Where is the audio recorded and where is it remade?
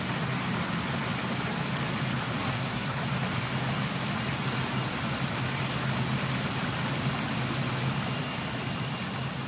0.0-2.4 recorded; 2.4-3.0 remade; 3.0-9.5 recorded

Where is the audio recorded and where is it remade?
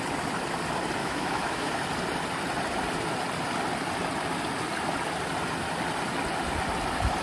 0.0-1.0 recorded; 1.0-1.7 remade; 1.7-7.2 recorded